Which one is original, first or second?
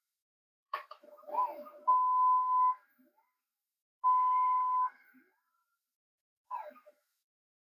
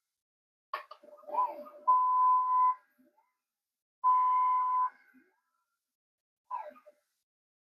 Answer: second